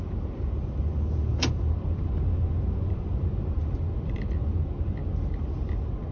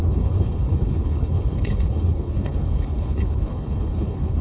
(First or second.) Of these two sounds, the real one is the first